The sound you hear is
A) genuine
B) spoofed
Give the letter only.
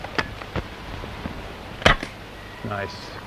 A